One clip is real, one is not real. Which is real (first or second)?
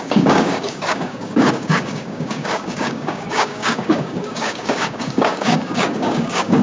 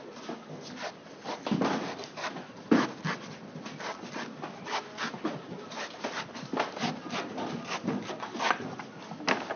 second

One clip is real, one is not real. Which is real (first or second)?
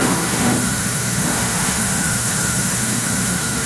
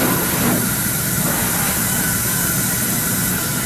second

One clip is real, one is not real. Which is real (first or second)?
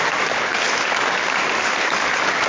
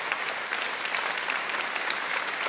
second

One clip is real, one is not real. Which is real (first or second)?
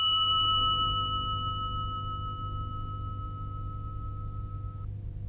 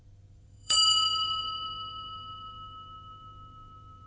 first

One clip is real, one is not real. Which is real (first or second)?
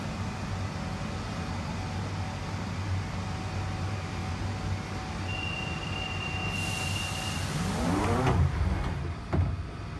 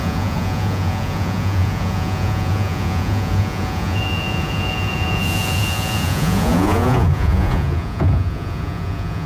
first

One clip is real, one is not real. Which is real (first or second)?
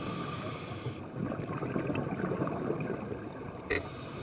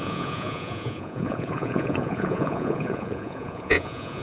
first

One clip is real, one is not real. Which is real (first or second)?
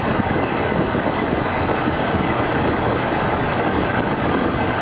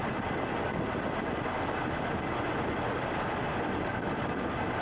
second